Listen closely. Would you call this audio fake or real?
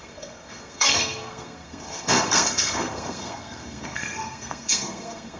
fake